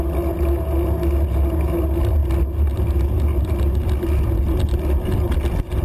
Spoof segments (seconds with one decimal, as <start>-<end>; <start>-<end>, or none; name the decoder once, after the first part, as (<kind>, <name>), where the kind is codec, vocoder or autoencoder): none